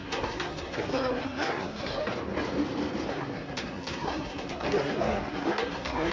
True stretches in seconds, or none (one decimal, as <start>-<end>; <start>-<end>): 2.0-3.1